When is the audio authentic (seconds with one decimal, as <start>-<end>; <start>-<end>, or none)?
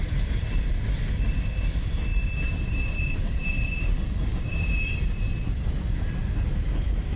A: 0.0-2.1; 5.8-7.2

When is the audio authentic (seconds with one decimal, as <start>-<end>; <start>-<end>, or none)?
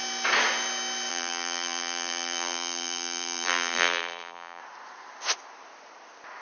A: 0.0-1.1; 4.6-6.4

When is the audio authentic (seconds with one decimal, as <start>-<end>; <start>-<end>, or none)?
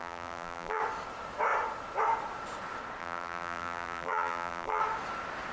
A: 0.8-3.0; 4.8-5.5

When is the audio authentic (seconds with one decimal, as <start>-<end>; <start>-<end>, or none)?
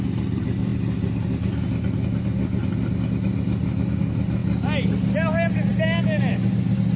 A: 0.0-7.0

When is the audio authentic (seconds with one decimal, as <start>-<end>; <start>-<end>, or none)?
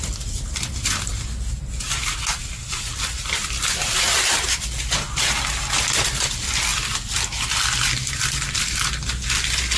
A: 0.0-9.8